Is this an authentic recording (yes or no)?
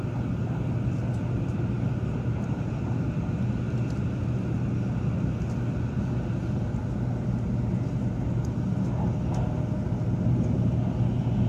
yes